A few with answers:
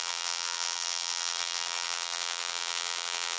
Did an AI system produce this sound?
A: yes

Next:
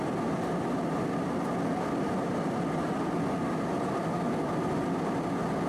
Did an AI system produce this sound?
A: no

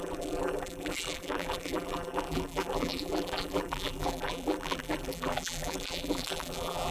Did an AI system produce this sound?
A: yes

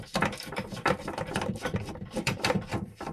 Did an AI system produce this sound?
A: yes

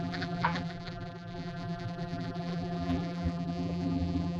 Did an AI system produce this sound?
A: yes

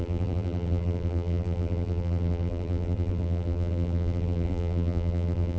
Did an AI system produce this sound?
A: yes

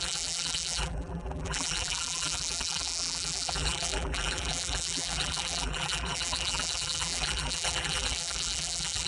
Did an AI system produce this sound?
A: yes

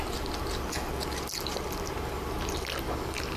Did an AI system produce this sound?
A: yes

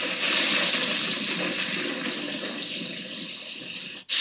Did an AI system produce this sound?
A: no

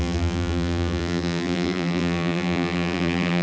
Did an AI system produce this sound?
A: yes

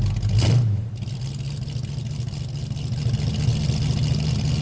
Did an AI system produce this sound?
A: no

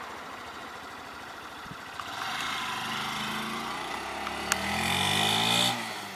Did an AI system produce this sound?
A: no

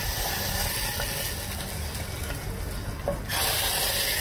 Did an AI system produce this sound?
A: no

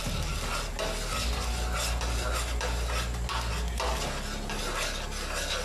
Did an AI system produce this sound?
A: no